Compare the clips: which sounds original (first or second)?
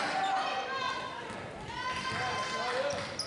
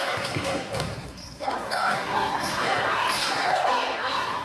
first